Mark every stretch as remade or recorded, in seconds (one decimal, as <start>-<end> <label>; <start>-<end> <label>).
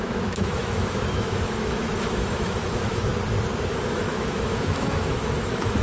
0.0-3.1 remade; 3.1-3.7 recorded; 3.7-5.8 remade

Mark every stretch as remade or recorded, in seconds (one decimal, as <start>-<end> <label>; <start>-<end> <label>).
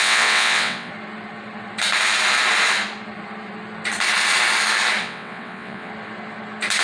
0.0-0.9 remade; 0.9-5.0 recorded; 5.0-5.9 remade; 5.9-6.8 recorded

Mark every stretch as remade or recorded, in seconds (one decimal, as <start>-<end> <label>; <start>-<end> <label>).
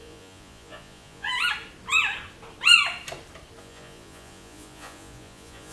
0.0-1.3 remade; 1.3-3.6 recorded; 3.6-5.7 remade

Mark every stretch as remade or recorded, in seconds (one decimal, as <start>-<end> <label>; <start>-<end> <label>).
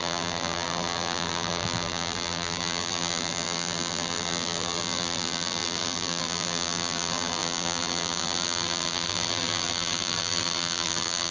0.0-11.3 remade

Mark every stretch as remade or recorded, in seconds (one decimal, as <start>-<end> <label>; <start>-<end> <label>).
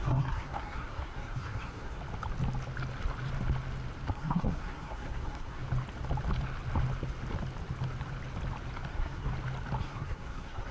0.0-2.0 remade; 2.0-4.1 recorded; 4.1-5.6 remade; 5.6-8.9 recorded; 8.9-9.3 remade; 9.3-9.8 recorded; 9.8-10.7 remade